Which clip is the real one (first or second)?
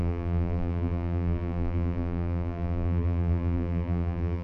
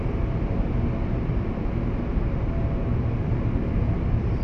second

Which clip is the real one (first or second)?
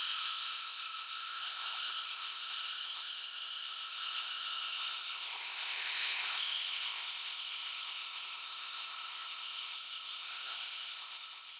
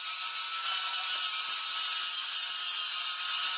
second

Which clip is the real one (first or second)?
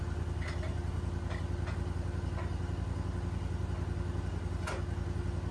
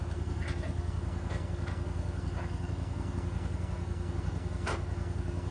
first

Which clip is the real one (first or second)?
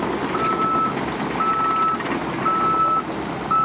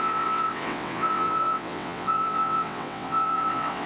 first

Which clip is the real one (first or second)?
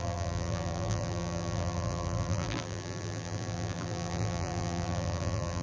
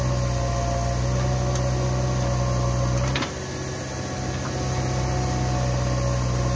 second